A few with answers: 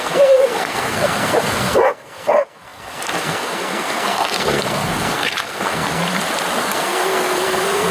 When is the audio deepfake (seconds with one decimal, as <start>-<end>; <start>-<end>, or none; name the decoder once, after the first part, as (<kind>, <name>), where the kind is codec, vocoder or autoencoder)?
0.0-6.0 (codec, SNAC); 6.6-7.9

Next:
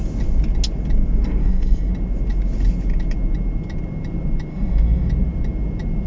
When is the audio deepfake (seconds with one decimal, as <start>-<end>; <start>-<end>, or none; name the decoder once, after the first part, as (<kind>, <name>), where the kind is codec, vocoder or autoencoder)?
1.4-1.9 (codec, SNAC); 4.5-5.1

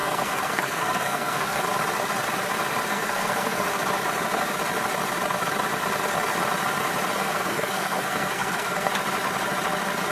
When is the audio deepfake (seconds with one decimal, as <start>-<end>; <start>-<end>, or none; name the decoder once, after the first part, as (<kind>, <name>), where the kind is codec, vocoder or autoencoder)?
0.0-1.6 (codec, SNAC); 2.9-3.7; 7.2-8.9

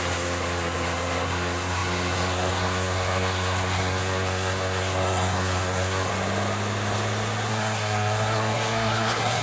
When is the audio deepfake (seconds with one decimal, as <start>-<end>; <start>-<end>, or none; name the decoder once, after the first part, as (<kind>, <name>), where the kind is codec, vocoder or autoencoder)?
0.0-6.1 (codec, SNAC); 7.5-9.4

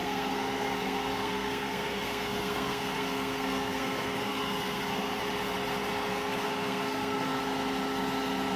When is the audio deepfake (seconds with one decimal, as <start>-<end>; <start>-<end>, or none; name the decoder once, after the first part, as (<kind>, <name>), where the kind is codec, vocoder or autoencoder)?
0.0-5.2 (codec, SNAC); 6.1-7.4

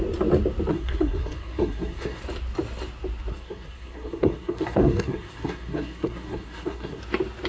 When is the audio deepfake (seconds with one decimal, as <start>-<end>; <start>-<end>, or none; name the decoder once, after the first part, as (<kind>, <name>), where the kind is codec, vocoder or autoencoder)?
0.7-2.2 (codec, SNAC); 3.3-7.0

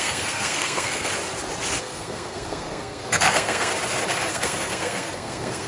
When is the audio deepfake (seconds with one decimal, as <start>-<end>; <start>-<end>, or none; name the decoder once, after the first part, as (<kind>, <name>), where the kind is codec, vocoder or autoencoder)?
0.0-1.1 (codec, SNAC); 1.8-3.7; 4.3-5.7